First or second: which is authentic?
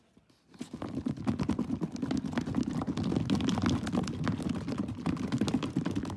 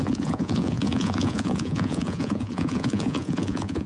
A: first